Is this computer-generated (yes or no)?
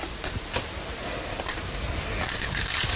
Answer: no